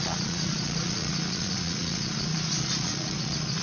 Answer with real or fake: fake